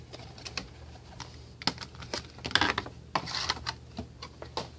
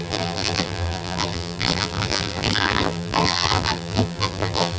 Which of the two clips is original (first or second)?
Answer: first